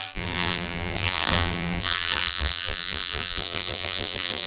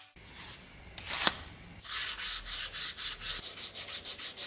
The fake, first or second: first